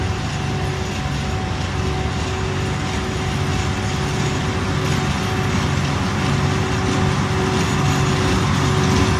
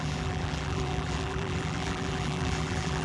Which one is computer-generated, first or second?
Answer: second